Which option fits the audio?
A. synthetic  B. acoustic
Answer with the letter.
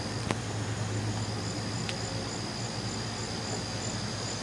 B